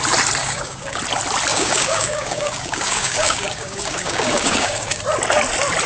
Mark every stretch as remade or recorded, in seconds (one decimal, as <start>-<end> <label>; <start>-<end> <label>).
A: 0.0-0.4 recorded; 0.4-1.0 remade; 1.0-1.5 recorded; 1.5-5.0 remade; 5.0-5.9 recorded